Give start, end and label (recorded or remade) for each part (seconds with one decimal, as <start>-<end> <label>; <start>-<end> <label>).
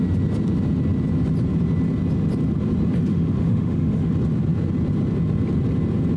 0.0-3.1 recorded; 3.1-4.1 remade; 4.1-6.2 recorded